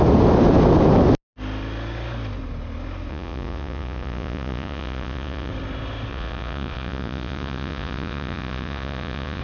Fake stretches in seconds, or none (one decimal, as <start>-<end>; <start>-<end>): 3.1-5.5; 6.1-9.4